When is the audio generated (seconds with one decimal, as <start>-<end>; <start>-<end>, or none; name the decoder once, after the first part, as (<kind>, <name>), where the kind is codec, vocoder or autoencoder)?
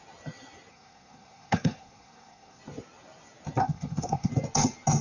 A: 0.7-2.6 (codec, SNAC); 3.6-4.3